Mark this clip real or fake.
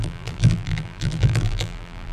fake